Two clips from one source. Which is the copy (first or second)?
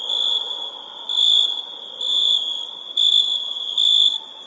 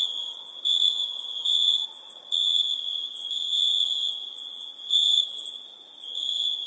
second